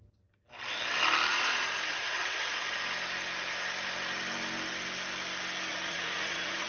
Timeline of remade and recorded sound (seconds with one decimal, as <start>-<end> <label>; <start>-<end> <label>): 0.0-1.3 recorded; 1.3-2.6 remade; 2.6-5.7 recorded; 5.7-6.7 remade